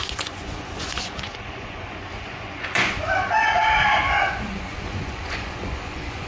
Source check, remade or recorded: remade